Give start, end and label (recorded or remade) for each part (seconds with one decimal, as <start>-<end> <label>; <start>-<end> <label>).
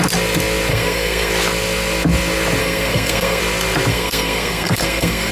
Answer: 0.0-0.7 recorded; 0.7-1.3 remade; 1.3-2.6 recorded; 2.6-3.4 remade; 3.4-3.9 recorded; 3.9-5.3 remade